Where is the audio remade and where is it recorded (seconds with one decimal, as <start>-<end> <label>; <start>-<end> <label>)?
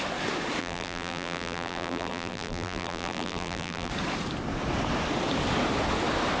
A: 0.0-0.6 recorded; 0.6-3.9 remade; 3.9-6.4 recorded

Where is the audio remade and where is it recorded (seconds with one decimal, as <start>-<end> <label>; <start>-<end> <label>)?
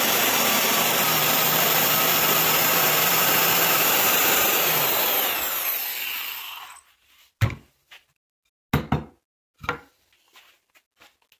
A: 0.0-2.6 recorded; 2.6-5.3 remade; 5.3-11.4 recorded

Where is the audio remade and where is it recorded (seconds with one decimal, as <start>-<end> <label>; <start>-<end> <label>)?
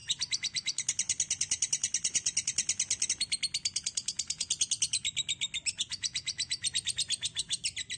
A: 0.0-8.0 recorded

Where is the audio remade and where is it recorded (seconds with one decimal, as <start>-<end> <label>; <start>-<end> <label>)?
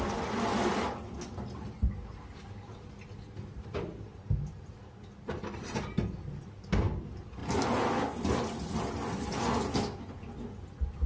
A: 0.0-11.1 recorded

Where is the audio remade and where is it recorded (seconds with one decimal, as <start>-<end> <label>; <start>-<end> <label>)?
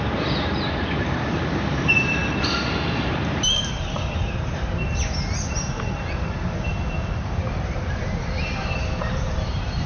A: 0.0-9.9 remade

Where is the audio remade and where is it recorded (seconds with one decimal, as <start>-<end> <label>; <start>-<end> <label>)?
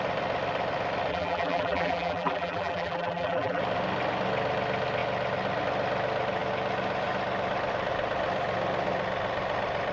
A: 0.0-1.1 recorded; 1.1-3.6 remade; 3.6-9.9 recorded